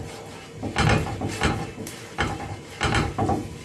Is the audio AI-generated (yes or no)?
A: no